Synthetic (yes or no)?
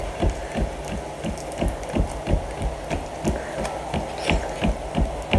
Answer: no